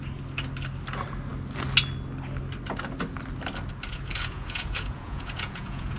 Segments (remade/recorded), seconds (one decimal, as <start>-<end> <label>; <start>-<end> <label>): 0.0-3.9 recorded; 3.9-6.0 remade